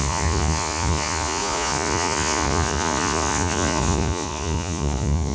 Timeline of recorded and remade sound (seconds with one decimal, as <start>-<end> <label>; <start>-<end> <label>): 0.0-5.3 remade